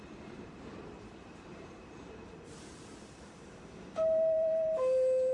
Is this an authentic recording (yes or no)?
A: no